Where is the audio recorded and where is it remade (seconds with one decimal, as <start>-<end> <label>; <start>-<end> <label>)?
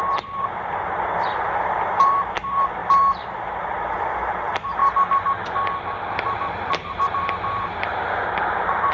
0.0-4.8 remade; 4.8-6.1 recorded; 6.1-8.9 remade